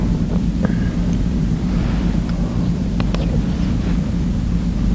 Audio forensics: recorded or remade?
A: remade